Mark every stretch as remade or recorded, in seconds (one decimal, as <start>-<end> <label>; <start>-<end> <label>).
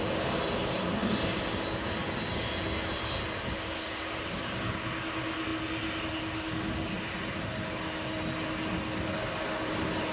0.0-10.1 recorded